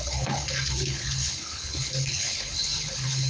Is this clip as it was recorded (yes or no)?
no